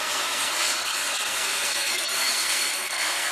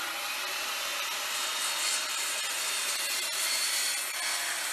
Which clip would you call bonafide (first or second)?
second